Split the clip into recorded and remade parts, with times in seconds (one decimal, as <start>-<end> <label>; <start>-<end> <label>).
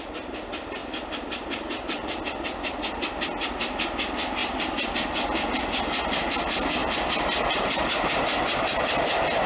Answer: 0.0-0.8 recorded; 0.8-2.2 remade; 2.2-4.4 recorded; 4.4-4.9 remade; 4.9-9.5 recorded